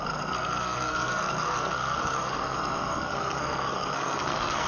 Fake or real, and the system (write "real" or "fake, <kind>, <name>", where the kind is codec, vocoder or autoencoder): fake, codec, SNAC